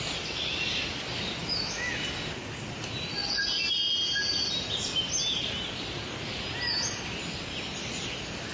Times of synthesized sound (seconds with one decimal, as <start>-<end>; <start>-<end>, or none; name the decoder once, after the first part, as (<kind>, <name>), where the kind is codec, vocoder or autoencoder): 1.4-1.9 (autoencoder, DAC-VAE)